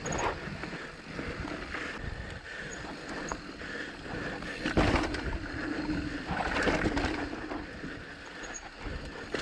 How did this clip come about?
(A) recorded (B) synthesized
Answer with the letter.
A